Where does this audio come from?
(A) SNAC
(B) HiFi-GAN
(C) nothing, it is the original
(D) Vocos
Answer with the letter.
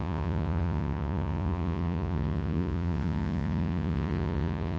D